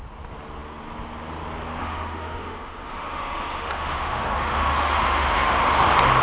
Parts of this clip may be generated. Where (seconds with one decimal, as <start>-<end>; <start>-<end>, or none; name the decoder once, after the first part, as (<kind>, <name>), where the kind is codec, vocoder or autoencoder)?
1.8-5.5 (autoencoder, DAC-VAE)